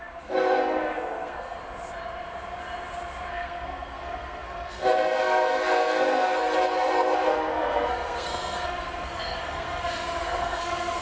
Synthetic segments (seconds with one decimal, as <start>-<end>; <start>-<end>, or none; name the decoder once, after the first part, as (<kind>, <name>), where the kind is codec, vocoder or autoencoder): 0.0-1.6 (codec, SNAC); 3.3-11.0